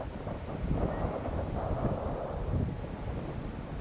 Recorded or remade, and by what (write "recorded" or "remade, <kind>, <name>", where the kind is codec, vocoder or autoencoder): recorded